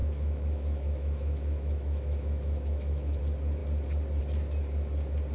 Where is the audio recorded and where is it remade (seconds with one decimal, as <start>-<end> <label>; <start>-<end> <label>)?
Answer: 0.0-3.2 remade; 3.2-5.3 recorded